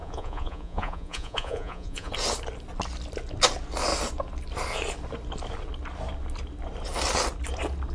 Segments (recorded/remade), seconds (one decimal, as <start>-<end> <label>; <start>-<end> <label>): 0.0-2.1 remade; 2.1-7.9 recorded